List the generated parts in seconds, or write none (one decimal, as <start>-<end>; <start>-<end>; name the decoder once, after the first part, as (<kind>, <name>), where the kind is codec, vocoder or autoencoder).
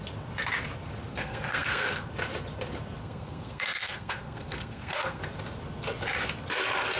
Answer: 1.1-2.1 (codec, SNAC); 3.0-5.2